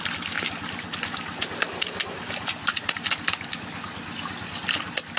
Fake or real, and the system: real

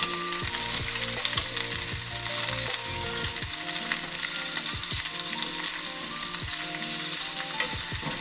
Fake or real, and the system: real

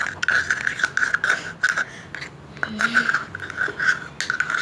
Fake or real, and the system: real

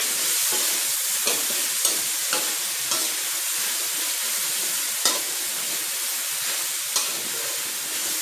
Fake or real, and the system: real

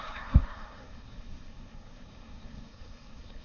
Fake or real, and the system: fake, codec, SNAC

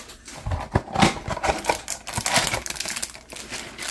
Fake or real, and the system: real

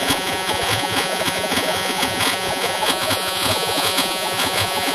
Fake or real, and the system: fake, vocoder, Vocos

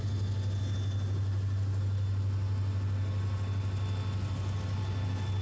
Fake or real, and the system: real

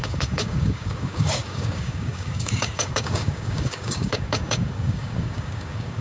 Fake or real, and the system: fake, codec, DAC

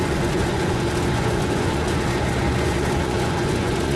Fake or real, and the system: fake, vocoder, Vocos